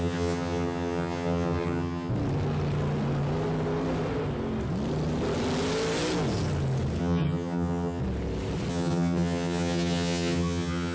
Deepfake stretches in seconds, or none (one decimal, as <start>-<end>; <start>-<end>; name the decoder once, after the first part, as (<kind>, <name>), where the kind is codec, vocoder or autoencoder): 0.0-2.1 (vocoder, HiFi-GAN); 7.0-8.0; 8.7-10.9